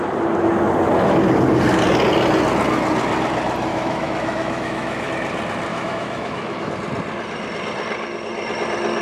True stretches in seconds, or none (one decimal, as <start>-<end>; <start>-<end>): 0.0-3.7; 5.1-5.7; 6.7-9.0